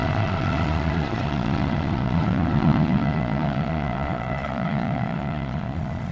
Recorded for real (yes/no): no